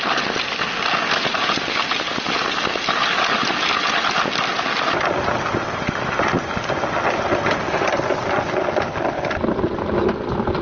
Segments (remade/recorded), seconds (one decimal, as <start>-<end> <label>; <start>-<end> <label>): 0.0-10.6 recorded